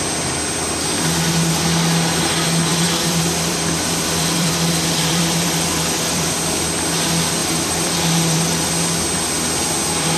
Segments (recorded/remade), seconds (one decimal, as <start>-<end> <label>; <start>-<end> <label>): 0.0-2.7 recorded; 2.7-6.3 remade; 6.3-7.4 recorded; 7.4-8.7 remade; 8.7-10.2 recorded